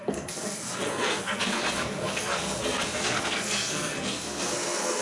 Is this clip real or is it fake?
fake